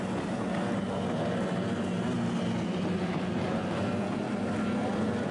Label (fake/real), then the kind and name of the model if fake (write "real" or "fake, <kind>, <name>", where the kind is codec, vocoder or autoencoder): real